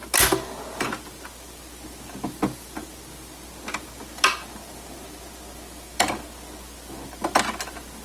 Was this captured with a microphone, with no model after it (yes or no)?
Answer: yes